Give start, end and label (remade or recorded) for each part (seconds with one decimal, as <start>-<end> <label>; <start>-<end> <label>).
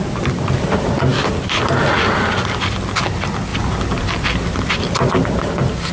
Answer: 0.0-5.9 recorded